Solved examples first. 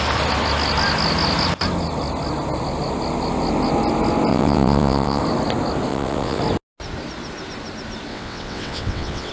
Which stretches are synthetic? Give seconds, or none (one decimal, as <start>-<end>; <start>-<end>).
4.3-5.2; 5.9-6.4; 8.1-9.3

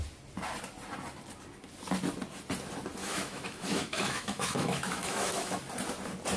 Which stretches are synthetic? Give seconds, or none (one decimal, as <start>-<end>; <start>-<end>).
3.0-5.6

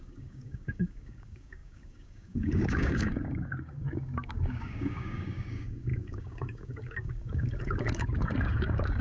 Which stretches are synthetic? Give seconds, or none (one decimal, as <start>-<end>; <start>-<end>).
0.0-9.0

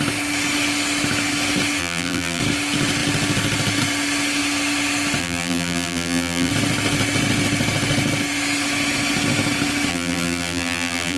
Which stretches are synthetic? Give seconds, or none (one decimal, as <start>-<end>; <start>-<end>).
1.8-2.4; 5.2-6.5; 9.9-11.2

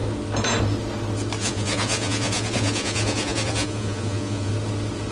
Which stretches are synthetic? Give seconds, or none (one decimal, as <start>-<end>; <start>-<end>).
1.4-4.5

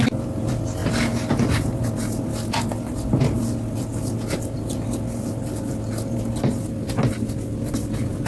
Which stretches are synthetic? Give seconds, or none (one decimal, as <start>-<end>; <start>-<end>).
none